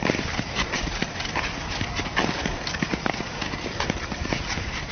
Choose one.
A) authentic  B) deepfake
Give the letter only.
A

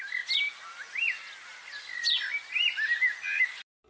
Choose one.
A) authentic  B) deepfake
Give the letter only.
A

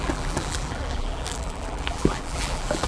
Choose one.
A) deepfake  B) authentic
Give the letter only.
A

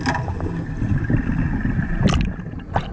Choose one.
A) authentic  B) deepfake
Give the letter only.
A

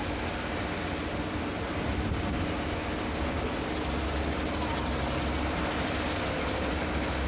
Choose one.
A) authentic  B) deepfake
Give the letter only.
A